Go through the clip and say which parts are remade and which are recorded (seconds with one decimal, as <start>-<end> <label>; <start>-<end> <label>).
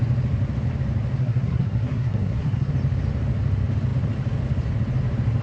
0.0-1.2 recorded; 1.2-2.7 remade; 2.7-5.4 recorded